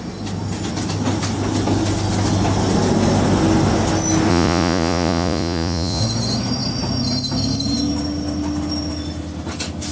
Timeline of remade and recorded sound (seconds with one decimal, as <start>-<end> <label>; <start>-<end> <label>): 0.0-4.3 recorded; 4.3-6.0 remade; 6.0-9.9 recorded